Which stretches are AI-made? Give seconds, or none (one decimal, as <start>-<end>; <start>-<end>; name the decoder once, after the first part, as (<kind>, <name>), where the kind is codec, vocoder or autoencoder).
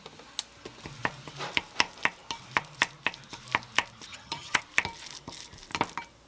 4.1-4.6 (vocoder, HiFi-GAN)